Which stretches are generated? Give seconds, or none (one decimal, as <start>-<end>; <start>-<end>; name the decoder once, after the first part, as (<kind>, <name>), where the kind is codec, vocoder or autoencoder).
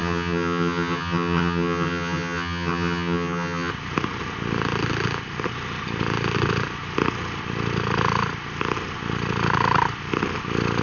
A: 0.0-3.7 (vocoder, HiFi-GAN)